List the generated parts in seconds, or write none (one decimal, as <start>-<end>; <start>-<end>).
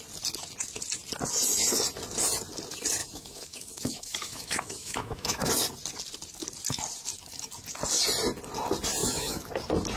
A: 3.0-5.5; 9.0-9.5